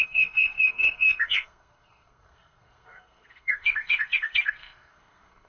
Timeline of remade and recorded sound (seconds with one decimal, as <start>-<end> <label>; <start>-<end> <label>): 0.0-5.5 remade

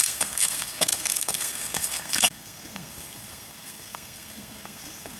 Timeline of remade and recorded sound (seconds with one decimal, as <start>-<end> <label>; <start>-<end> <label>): 0.0-5.2 remade

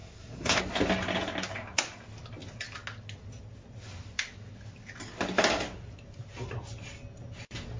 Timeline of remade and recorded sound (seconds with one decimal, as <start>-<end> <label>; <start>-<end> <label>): 0.0-0.6 remade; 0.6-7.8 recorded

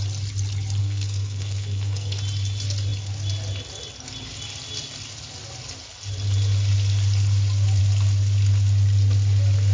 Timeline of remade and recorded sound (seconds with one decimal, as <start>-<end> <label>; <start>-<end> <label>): 0.0-0.8 recorded; 0.8-2.2 remade; 2.2-9.7 recorded